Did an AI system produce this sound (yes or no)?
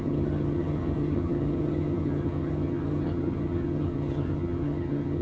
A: yes